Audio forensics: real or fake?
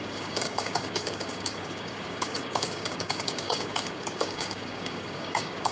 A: fake